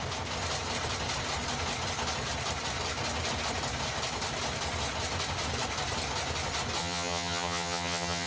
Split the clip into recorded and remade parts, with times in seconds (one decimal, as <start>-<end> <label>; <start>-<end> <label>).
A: 0.0-6.8 recorded; 6.8-8.3 remade